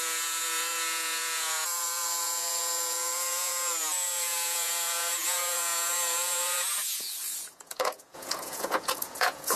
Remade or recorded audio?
remade